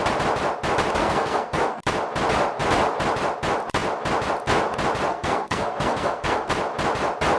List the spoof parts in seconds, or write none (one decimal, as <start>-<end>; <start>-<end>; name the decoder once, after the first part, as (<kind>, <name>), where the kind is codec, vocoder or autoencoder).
1.0-1.8 (codec, SNAC); 5.1-6.5